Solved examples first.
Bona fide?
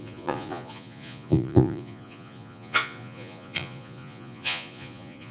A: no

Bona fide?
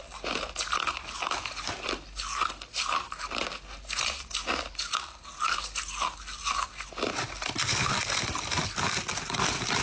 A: yes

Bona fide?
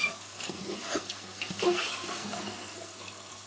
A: no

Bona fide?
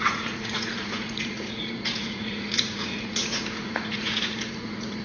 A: no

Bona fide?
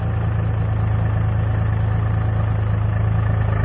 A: yes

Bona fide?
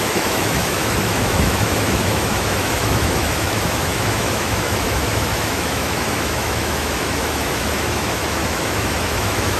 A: no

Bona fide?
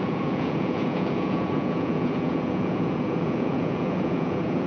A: no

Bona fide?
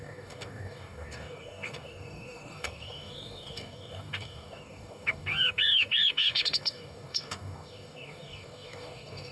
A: no